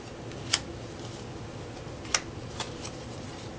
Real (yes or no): yes